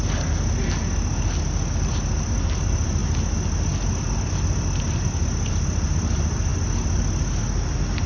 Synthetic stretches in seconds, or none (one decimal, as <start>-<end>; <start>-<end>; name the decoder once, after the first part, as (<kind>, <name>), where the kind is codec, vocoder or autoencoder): none